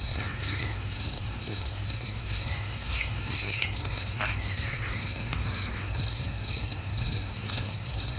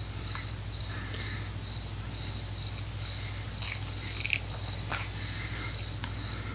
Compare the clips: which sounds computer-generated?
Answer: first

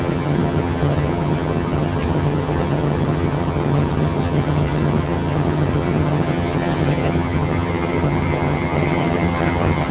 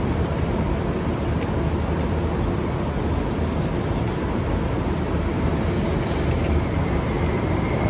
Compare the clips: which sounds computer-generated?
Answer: first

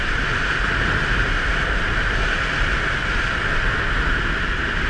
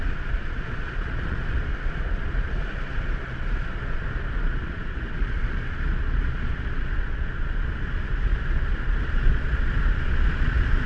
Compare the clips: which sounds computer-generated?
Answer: second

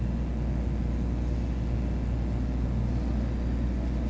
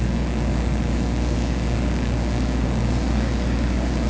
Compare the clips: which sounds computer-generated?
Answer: second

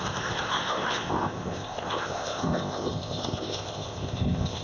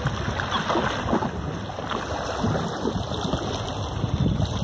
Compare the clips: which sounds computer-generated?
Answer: first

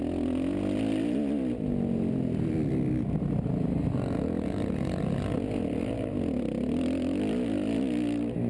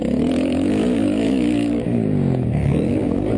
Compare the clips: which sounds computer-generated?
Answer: second